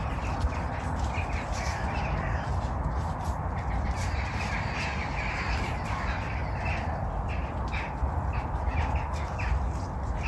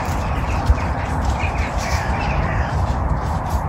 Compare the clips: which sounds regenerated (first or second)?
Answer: second